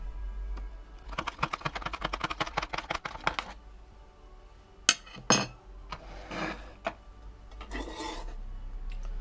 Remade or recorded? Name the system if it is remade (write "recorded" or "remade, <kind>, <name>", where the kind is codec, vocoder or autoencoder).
recorded